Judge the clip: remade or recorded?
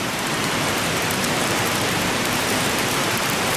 remade